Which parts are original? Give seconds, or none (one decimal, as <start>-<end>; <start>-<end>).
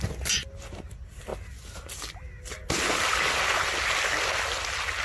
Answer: 0.0-5.0